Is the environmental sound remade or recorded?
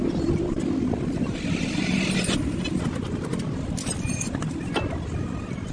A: recorded